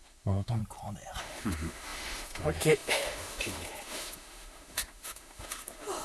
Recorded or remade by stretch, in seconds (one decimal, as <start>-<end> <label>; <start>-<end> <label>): 0.0-0.6 remade; 0.6-1.2 recorded; 1.2-6.0 remade

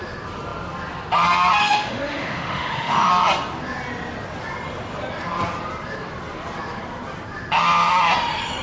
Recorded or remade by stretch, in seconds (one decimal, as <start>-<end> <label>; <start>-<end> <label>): 0.0-1.6 recorded; 1.6-3.1 remade; 3.1-8.6 recorded

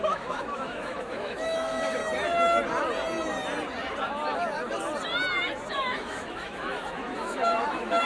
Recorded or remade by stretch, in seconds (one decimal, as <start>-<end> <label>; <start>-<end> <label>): 0.0-2.0 remade; 2.0-5.7 recorded; 5.7-8.1 remade

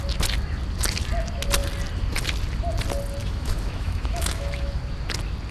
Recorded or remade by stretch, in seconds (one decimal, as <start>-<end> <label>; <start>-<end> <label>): 0.0-3.2 recorded; 3.2-4.8 remade; 4.8-5.5 recorded

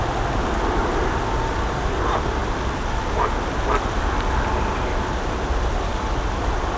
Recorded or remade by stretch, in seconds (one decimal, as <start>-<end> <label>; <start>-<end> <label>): 0.0-6.8 recorded

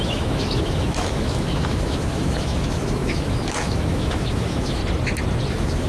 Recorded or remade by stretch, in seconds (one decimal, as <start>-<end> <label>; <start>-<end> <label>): 0.0-4.8 remade; 4.8-5.5 recorded; 5.5-5.9 remade

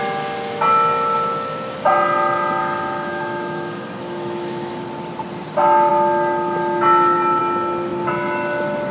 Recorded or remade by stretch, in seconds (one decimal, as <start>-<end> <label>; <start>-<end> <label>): 0.0-2.6 recorded; 2.6-4.8 remade; 4.8-8.9 recorded

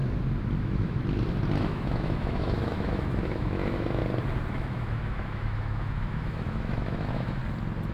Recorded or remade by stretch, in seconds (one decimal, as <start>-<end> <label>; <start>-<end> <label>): 0.0-0.6 recorded; 0.6-1.0 remade; 1.0-1.6 recorded; 1.6-4.0 remade; 4.0-4.5 recorded; 4.5-7.4 remade; 7.4-7.9 recorded